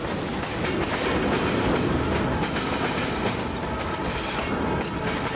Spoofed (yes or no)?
no